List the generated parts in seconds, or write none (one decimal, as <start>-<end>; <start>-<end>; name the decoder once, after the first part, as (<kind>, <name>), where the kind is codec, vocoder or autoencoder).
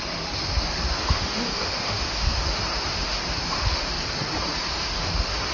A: 0.7-4.0 (autoencoder, DAC-VAE); 4.6-5.5